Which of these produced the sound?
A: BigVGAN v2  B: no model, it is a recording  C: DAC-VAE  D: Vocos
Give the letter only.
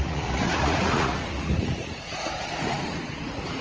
D